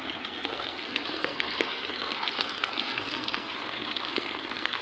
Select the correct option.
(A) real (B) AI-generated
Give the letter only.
B